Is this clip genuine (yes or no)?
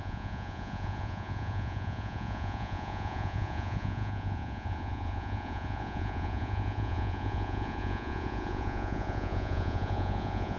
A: no